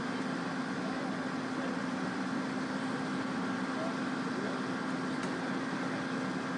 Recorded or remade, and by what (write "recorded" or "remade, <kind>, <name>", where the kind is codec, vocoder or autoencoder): recorded